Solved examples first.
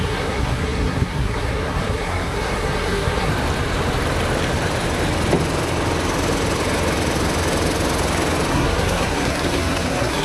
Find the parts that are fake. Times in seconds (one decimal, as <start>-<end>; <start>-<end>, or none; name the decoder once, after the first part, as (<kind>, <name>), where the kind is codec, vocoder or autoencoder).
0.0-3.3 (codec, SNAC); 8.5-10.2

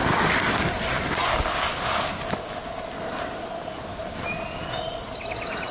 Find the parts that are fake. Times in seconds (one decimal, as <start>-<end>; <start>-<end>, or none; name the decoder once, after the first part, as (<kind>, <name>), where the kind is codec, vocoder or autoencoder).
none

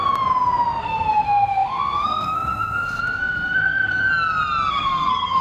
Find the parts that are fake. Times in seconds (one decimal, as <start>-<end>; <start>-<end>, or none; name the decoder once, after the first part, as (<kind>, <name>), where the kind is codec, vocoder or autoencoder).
0.8-4.0 (codec, SNAC); 4.7-5.4

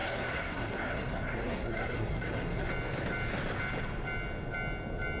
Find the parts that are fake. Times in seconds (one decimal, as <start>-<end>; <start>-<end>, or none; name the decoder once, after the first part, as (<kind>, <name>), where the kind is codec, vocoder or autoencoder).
0.0-2.7 (codec, SNAC)